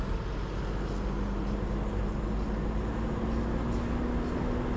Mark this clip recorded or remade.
recorded